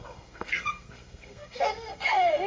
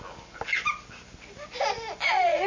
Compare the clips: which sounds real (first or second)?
second